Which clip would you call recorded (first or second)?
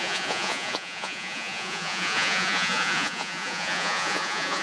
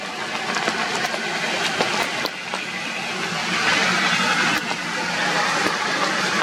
second